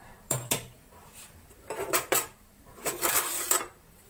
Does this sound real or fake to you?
fake